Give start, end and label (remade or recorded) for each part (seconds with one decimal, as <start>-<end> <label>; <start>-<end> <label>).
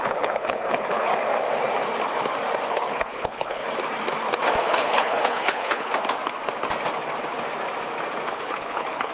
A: 0.0-1.1 remade; 1.1-2.7 recorded; 2.7-3.6 remade; 3.6-4.6 recorded; 4.6-5.9 remade; 5.9-8.3 recorded; 8.3-9.1 remade